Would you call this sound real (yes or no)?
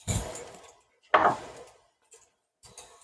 yes